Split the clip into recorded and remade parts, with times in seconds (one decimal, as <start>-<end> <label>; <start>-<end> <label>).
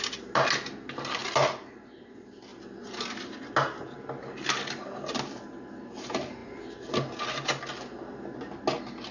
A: 0.0-9.1 recorded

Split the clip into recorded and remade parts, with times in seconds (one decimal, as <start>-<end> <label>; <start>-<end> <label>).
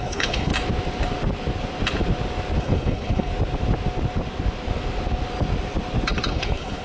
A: 0.0-0.5 remade; 0.5-2.6 recorded; 2.6-3.3 remade; 3.3-6.3 recorded; 6.3-6.8 remade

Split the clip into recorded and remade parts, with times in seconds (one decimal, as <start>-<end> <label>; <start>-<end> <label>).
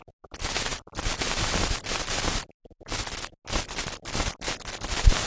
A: 0.0-5.3 recorded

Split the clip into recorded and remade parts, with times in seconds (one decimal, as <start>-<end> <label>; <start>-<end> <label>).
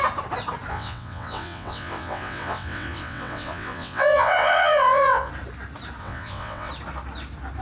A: 0.0-0.7 recorded; 0.7-5.3 remade; 5.3-6.0 recorded; 6.0-6.7 remade; 6.7-7.6 recorded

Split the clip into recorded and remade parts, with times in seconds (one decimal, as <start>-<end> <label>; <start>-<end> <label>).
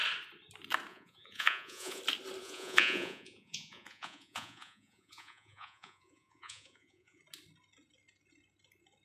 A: 0.0-0.9 recorded; 0.9-2.0 remade; 2.0-2.4 recorded; 2.4-7.2 remade; 7.2-9.0 recorded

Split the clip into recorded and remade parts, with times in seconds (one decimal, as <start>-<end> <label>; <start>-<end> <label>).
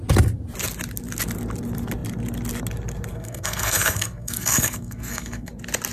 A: 0.0-3.1 recorded; 3.1-5.5 remade; 5.5-5.9 recorded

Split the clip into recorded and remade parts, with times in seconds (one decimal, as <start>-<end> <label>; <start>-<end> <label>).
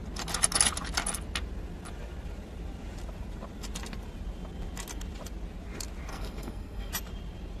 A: 0.0-6.1 recorded; 6.1-6.9 remade; 6.9-7.6 recorded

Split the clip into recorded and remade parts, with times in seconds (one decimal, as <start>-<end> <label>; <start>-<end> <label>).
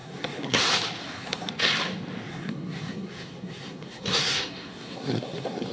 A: 0.0-0.6 remade; 0.6-1.0 recorded; 1.0-1.5 remade; 1.5-2.3 recorded; 2.3-5.7 remade